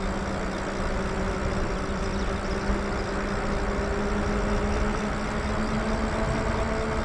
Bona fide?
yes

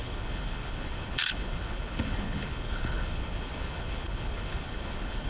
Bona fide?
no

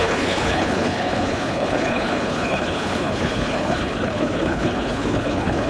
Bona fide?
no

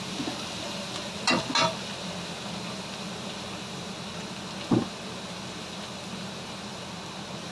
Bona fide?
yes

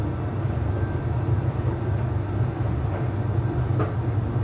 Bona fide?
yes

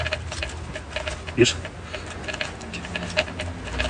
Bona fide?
yes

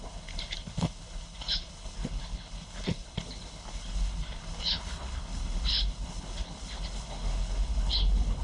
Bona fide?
no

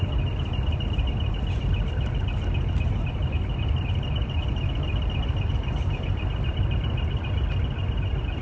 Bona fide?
yes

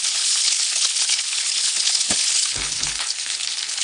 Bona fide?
no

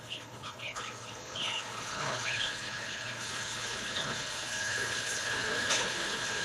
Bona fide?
no